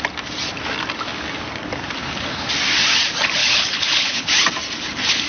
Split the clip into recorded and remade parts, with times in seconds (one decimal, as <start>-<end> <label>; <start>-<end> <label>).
0.0-2.0 recorded; 2.0-2.5 remade; 2.5-3.4 recorded; 3.4-4.3 remade; 4.3-5.3 recorded